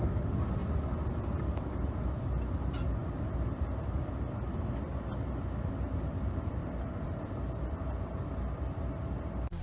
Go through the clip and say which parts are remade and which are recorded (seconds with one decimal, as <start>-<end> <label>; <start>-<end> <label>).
0.0-0.6 recorded; 0.6-2.2 remade; 2.2-3.0 recorded; 3.0-3.7 remade; 3.7-6.6 recorded; 6.6-7.8 remade; 7.8-9.6 recorded